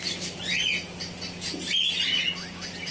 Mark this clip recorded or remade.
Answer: recorded